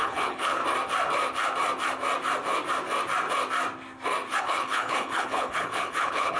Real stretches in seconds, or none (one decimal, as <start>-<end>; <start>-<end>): 0.6-4.4